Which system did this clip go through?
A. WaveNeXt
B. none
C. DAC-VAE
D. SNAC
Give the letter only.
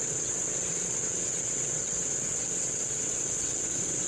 A